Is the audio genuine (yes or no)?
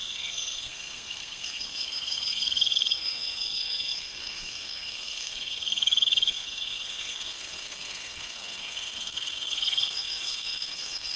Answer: no